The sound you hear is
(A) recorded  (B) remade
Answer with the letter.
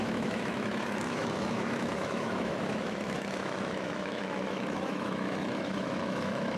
B